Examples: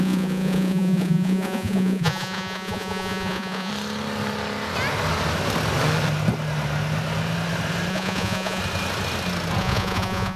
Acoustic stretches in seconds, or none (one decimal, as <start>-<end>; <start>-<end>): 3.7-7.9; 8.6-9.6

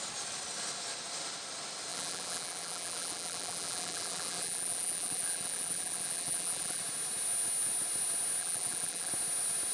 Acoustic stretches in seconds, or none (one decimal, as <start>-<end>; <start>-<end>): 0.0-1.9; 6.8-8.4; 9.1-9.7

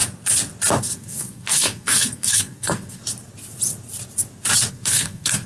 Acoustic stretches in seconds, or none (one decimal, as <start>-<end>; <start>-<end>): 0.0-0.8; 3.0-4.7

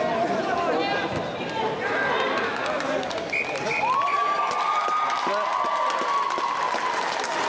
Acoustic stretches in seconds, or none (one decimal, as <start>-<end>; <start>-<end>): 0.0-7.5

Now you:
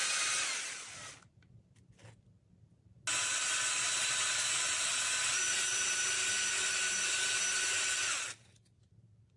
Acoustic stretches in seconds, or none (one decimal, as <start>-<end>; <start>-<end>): 0.0-9.4

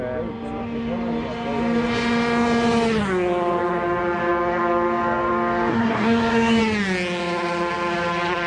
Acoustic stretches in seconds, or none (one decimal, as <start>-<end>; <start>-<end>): 0.0-5.7; 6.6-8.5

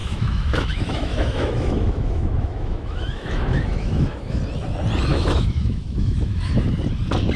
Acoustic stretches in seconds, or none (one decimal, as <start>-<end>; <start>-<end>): 4.4-5.1; 6.7-7.4

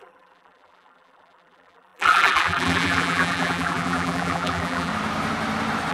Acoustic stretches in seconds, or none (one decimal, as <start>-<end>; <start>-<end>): 4.9-5.9